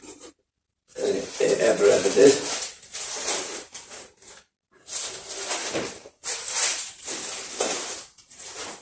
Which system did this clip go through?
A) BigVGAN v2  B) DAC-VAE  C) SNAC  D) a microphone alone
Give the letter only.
A